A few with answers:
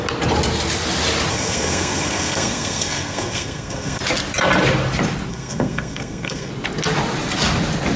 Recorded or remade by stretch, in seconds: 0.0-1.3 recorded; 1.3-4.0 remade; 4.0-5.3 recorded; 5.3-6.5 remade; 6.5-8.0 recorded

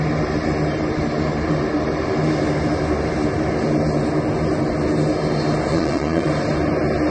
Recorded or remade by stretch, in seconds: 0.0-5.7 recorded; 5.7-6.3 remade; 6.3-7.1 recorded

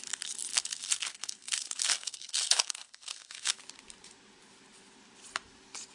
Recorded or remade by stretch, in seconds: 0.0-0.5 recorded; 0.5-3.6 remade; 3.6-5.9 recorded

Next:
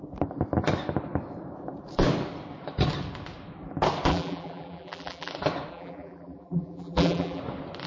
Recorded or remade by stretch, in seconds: 0.0-4.1 recorded; 4.1-5.3 remade; 5.3-5.7 recorded; 5.7-7.4 remade; 7.4-7.9 recorded

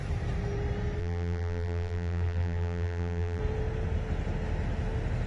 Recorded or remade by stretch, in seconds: 0.0-1.0 recorded; 1.0-3.4 remade; 3.4-5.3 recorded

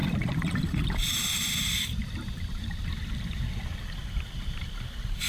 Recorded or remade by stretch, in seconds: 0.0-3.1 remade; 3.1-4.0 recorded; 4.0-4.5 remade; 4.5-5.3 recorded